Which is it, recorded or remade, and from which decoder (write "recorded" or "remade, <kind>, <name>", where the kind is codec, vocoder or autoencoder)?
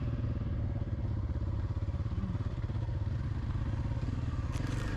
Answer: recorded